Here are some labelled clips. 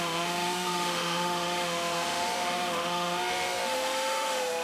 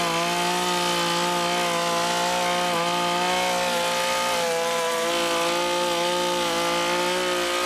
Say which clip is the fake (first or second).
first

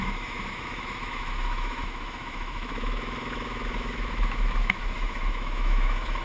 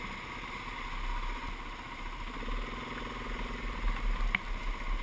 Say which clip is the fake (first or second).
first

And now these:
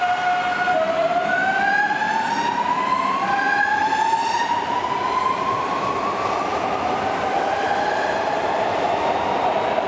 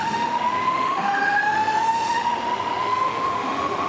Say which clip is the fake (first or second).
second